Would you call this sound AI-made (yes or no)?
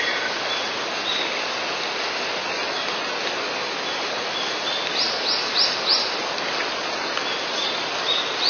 no